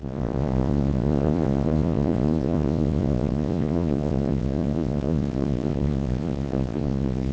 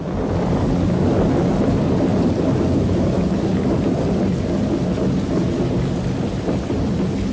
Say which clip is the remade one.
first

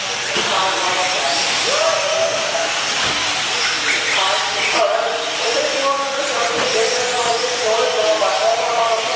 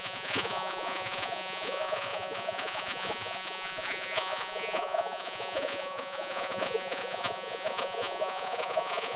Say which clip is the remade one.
second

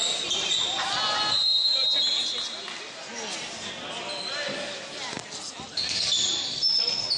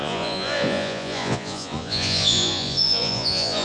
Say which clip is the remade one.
second